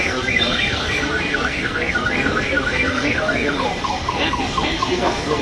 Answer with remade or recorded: remade